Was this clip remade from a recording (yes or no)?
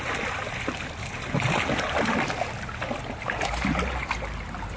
no